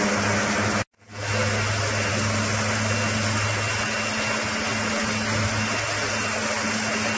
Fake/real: real